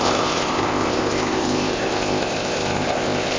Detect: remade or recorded remade